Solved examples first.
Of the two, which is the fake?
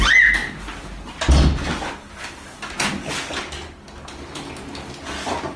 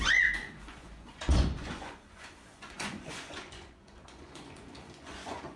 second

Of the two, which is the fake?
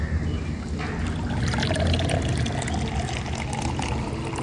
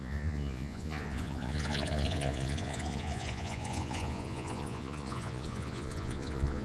second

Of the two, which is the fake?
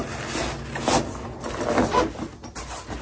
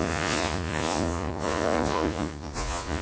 second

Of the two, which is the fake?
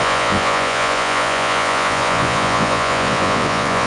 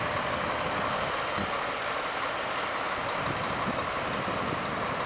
first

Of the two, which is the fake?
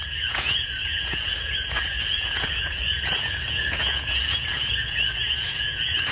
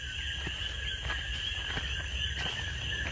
first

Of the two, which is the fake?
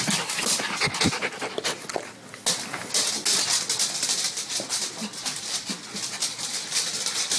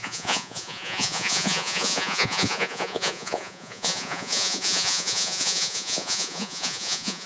second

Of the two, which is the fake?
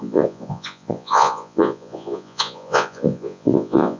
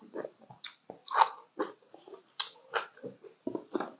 first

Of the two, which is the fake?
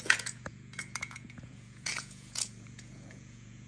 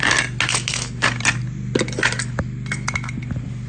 first